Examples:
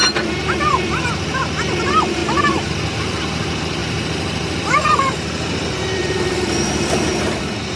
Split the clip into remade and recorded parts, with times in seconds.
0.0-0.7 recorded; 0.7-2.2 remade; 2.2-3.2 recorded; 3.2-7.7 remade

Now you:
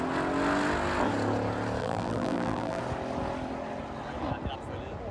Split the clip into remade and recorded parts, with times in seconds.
0.0-1.8 recorded; 1.8-2.8 remade; 2.8-5.1 recorded

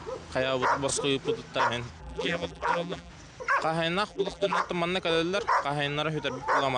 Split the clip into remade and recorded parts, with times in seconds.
0.0-2.0 recorded; 2.0-3.1 remade; 3.1-4.1 recorded; 4.1-4.6 remade; 4.6-6.8 recorded

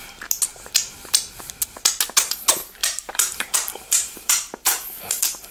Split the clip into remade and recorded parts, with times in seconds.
0.0-2.8 recorded; 2.8-5.5 remade

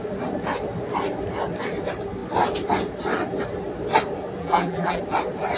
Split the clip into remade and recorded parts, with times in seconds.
0.0-4.4 recorded; 4.4-5.0 remade; 5.0-5.6 recorded